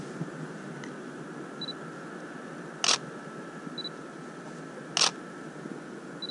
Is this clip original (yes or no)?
yes